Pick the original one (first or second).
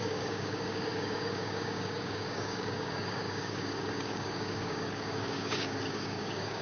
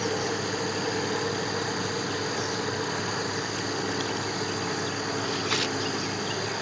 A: second